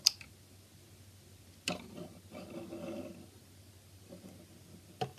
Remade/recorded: recorded